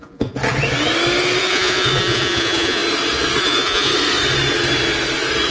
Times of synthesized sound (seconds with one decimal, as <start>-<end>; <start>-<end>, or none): 0.0-0.4; 1.4-2.8; 3.4-3.9